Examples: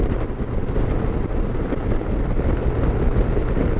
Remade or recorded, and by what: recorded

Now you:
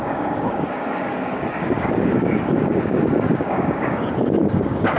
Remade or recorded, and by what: remade, codec, DAC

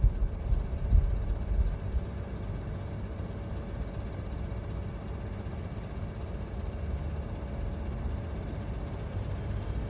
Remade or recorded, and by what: recorded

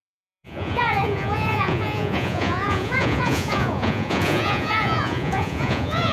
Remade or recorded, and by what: remade, vocoder, Vocos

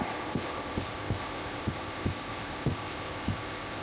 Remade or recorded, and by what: remade, codec, ZipCodec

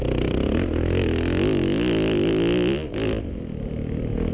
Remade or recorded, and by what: recorded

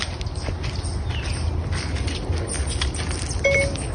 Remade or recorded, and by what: recorded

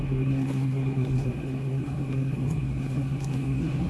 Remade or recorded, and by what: remade, codec, SNAC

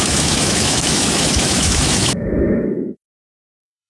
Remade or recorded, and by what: remade, autoencoder, DAC-VAE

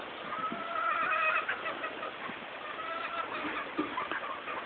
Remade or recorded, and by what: recorded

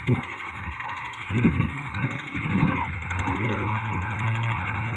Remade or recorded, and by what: remade, codec, SNAC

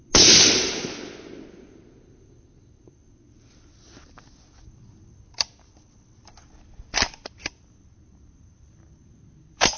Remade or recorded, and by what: recorded